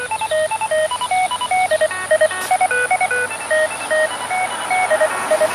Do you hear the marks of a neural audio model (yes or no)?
no